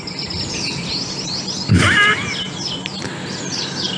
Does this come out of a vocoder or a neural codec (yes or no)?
no